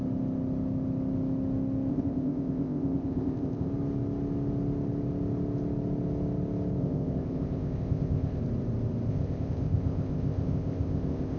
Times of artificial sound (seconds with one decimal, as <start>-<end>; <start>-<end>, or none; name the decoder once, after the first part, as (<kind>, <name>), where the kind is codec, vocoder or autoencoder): 1.9-3.7 (codec, ZipCodec); 6.8-8.4; 9.1-11.4